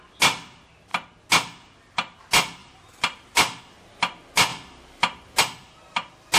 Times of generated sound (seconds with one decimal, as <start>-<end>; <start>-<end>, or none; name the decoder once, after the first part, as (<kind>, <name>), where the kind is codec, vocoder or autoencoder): 2.6-3.6 (vocoder, BigVGAN v2)